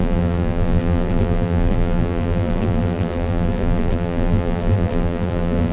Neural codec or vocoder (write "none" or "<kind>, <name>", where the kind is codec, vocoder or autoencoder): vocoder, BigVGAN v2